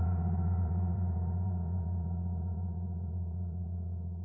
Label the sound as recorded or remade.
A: remade